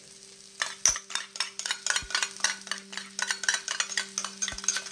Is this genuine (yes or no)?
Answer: yes